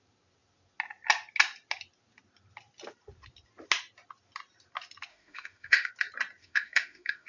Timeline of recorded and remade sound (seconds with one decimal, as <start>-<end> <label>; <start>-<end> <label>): 0.0-5.1 recorded; 5.1-5.9 remade; 5.9-6.4 recorded; 6.4-7.3 remade